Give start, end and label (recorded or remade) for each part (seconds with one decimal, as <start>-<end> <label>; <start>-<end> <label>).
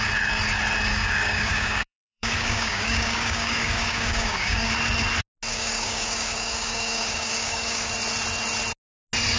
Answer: 0.0-0.9 recorded; 0.9-4.7 remade; 4.7-5.5 recorded; 5.5-7.9 remade; 7.9-9.4 recorded